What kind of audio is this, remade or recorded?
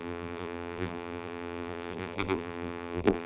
remade